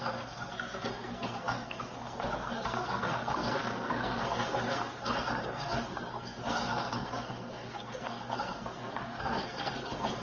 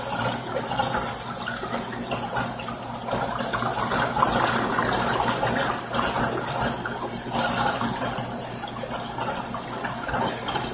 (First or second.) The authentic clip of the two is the second